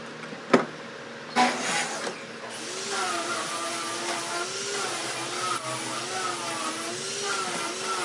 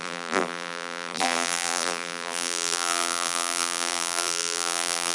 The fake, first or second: second